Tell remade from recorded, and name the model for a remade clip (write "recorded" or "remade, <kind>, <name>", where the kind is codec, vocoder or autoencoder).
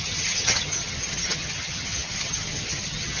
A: remade, vocoder, HiFi-GAN